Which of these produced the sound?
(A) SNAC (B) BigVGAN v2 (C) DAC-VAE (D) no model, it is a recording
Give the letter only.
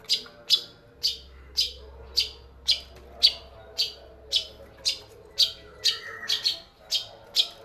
D